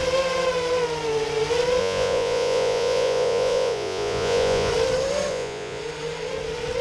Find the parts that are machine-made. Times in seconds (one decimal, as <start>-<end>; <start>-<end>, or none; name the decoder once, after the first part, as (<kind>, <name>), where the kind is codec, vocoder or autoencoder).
1.8-4.7 (vocoder, Vocos); 5.3-5.8